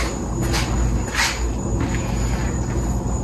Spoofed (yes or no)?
no